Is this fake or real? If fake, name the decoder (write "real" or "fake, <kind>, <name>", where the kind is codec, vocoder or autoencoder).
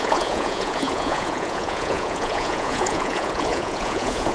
fake, vocoder, Vocos